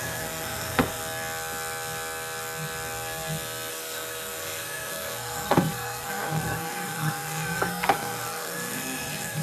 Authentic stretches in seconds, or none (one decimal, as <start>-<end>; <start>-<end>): 1.0-3.7